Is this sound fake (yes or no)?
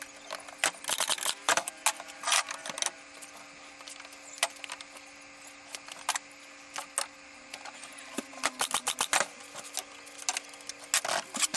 no